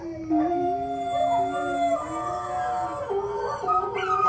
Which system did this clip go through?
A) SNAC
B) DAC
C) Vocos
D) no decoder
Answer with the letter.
D